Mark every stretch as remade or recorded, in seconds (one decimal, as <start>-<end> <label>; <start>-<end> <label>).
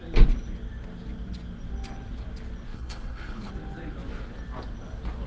0.0-2.7 recorded; 2.7-3.5 remade; 3.5-5.3 recorded